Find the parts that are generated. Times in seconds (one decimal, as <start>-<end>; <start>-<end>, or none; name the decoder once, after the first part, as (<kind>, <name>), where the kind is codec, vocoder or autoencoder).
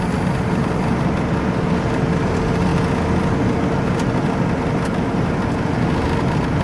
none